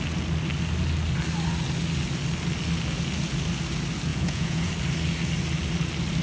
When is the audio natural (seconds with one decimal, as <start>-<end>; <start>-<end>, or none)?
0.0-4.1; 4.7-6.2